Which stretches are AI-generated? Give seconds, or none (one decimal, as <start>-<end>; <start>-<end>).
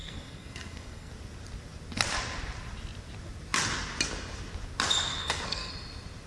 0.0-1.1; 5.1-5.7